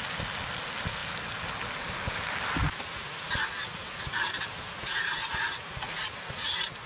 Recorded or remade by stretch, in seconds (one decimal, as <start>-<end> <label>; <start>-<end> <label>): 0.0-6.9 recorded